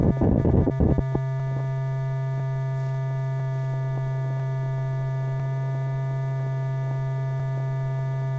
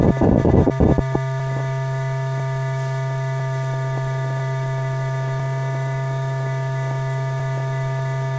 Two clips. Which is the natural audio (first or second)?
first